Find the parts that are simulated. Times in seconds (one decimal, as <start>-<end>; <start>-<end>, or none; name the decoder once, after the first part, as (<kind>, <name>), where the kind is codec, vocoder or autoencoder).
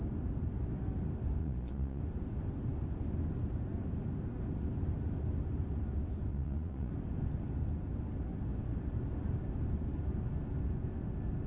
1.4-2.0 (vocoder, Vocos); 6.3-6.9